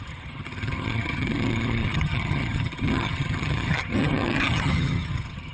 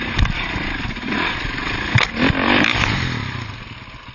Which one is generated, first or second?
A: first